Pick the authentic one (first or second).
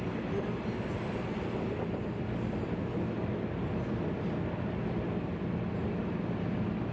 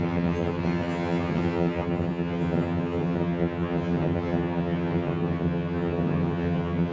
first